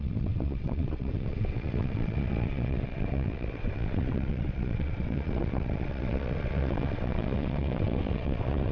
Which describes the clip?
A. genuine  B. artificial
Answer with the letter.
B